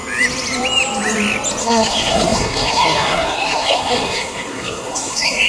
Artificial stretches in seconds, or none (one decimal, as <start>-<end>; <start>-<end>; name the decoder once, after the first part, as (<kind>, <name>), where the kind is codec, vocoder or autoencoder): 1.6-5.5 (codec, SNAC)